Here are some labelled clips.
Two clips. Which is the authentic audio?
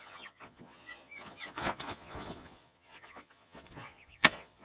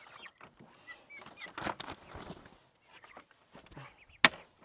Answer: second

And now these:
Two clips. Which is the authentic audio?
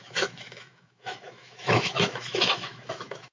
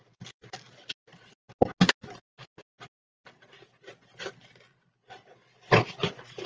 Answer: second